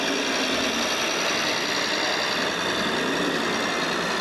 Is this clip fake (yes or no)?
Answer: no